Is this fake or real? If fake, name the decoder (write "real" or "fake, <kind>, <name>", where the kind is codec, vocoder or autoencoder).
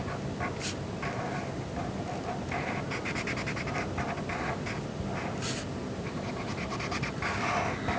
real